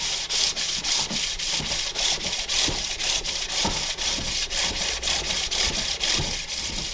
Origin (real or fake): fake